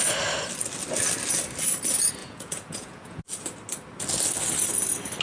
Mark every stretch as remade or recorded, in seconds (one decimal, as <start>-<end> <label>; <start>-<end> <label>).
0.0-2.2 recorded; 2.2-3.2 remade; 3.2-5.2 recorded